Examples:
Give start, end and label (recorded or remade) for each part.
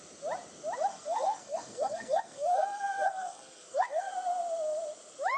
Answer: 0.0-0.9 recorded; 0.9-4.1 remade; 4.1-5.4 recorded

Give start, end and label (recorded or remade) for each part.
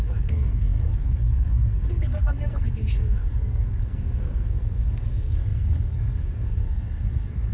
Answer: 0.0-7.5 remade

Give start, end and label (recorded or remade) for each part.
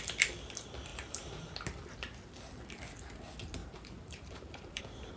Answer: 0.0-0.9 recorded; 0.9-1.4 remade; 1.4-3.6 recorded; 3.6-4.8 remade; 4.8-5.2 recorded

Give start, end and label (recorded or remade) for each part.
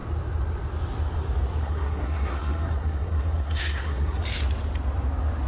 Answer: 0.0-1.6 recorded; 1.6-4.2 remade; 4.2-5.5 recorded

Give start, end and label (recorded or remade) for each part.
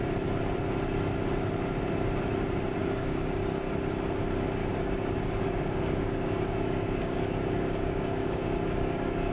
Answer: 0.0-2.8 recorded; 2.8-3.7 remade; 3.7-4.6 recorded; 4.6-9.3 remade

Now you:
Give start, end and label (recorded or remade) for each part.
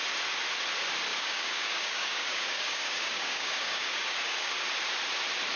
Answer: 0.0-1.1 recorded; 1.1-4.5 remade; 4.5-5.6 recorded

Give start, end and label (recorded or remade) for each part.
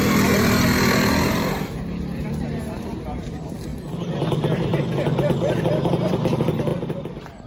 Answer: 0.0-3.7 remade; 3.7-4.3 recorded; 4.3-4.7 remade; 4.7-5.3 recorded; 5.3-7.5 remade